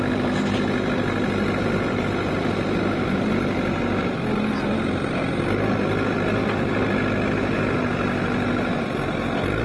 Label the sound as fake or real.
real